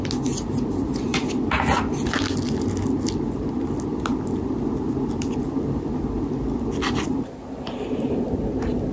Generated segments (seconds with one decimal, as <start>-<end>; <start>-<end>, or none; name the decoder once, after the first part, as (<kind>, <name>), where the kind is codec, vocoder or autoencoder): none